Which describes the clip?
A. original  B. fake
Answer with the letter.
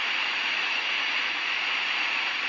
B